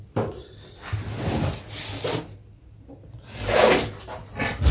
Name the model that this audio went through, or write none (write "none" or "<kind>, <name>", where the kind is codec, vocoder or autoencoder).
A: none